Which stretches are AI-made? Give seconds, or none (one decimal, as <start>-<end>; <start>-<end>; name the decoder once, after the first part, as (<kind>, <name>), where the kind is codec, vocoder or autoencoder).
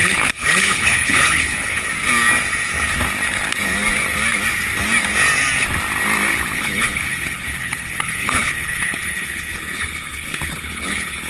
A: 0.0-1.9 (codec, HILCodec); 6.3-11.3